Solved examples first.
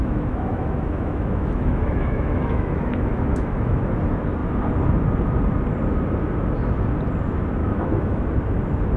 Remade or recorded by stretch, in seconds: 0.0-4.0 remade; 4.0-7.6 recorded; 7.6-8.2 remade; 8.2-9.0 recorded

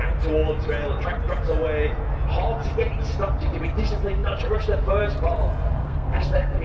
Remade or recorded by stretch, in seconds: 0.0-5.8 recorded; 5.8-6.6 remade

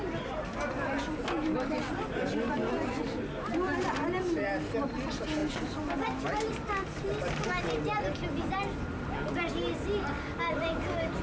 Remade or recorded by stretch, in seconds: 0.0-11.2 recorded

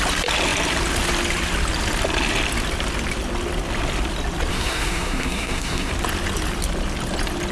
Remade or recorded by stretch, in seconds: 0.0-4.5 recorded; 4.5-5.9 remade; 5.9-7.5 recorded

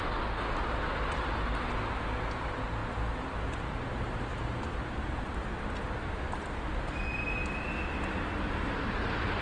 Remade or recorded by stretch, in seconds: 0.0-9.4 recorded

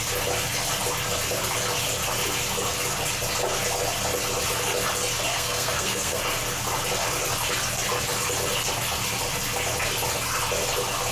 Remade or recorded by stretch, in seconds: 0.0-5.3 recorded; 5.3-6.2 remade; 6.2-11.1 recorded

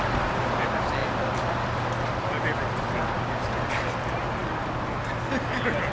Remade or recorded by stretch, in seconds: 0.0-5.9 recorded

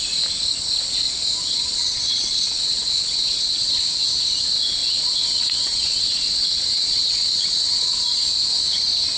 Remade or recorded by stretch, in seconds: 0.0-1.4 recorded; 1.4-4.1 remade; 4.1-4.8 recorded; 4.8-8.0 remade; 8.0-9.2 recorded